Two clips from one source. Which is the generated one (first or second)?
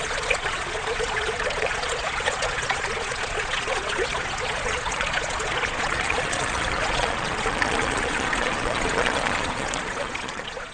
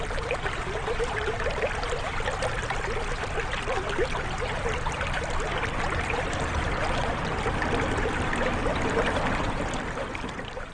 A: first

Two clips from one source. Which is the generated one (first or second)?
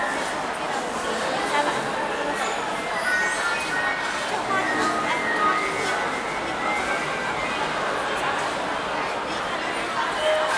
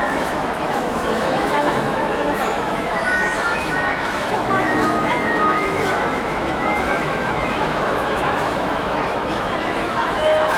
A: second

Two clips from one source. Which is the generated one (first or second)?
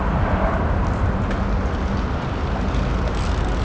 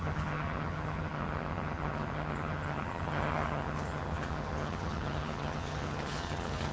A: second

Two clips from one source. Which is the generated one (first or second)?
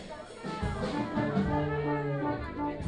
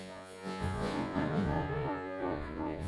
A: second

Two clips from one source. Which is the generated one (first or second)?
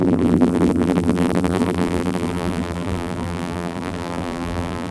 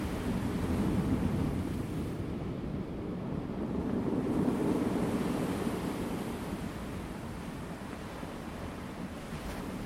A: first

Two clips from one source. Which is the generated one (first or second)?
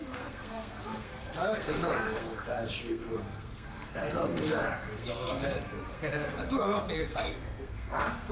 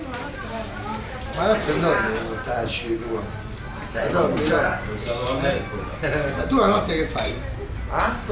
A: first